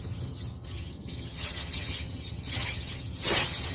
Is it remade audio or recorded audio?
remade